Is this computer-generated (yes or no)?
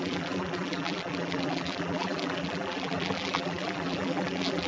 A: yes